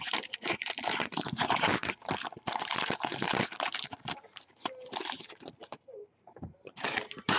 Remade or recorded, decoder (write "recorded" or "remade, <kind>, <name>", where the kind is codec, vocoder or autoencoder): remade, vocoder, BigVGAN v2